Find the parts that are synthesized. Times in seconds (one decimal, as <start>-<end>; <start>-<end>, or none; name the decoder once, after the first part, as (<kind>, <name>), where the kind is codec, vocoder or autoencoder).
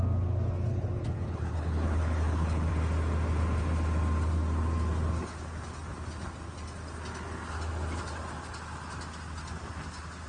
0.7-2.7 (codec, HILCodec)